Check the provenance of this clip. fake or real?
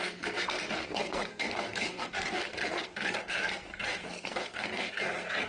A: fake